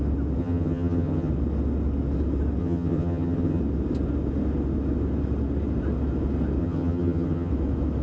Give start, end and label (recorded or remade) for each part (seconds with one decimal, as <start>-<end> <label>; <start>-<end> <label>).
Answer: 0.0-0.4 recorded; 0.4-1.3 remade; 1.3-2.6 recorded; 2.6-3.6 remade; 3.6-6.6 recorded; 6.6-7.5 remade; 7.5-8.0 recorded